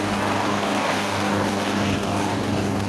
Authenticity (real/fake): fake